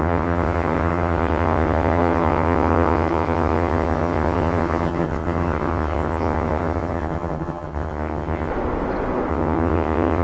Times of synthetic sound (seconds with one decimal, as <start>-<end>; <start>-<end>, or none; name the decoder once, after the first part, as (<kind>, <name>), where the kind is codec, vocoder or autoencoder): 0.0-8.5 (vocoder, HiFi-GAN); 9.3-10.2